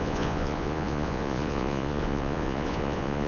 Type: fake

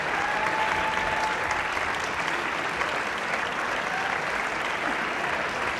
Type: real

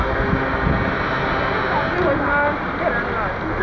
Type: real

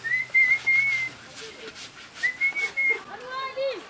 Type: real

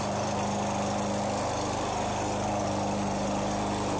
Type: real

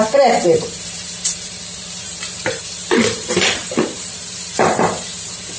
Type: fake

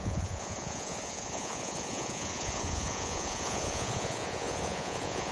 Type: fake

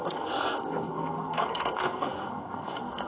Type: fake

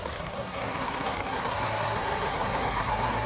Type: fake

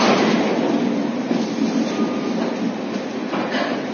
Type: real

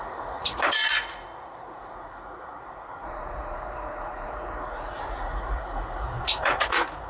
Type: fake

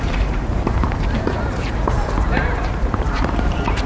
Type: fake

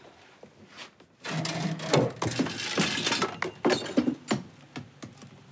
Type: real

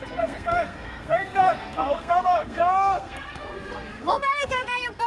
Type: fake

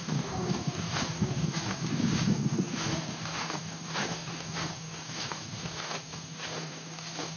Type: fake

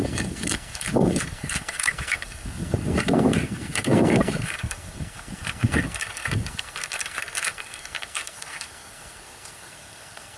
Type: fake